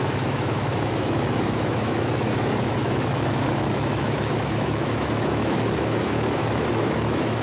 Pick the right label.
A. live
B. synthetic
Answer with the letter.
B